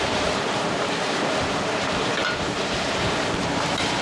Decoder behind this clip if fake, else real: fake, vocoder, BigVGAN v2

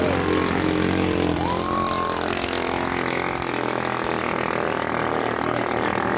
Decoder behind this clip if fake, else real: real